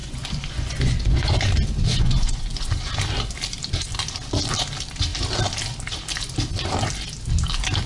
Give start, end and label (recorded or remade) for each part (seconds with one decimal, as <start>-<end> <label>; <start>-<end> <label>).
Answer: 0.0-1.3 remade; 1.3-1.9 recorded; 1.9-2.7 remade; 2.7-7.9 recorded

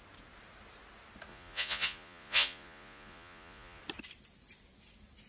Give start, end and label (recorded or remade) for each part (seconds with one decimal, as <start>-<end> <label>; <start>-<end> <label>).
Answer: 0.0-1.3 recorded; 1.3-3.8 remade; 3.8-5.3 recorded

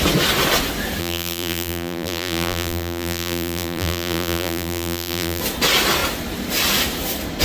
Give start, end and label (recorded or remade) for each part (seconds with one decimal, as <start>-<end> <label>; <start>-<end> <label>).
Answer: 0.0-1.0 recorded; 1.0-5.4 remade; 5.4-7.4 recorded

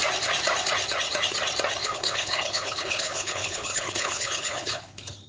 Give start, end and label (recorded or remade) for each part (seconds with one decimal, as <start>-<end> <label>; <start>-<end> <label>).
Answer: 0.0-1.8 recorded; 1.8-5.3 remade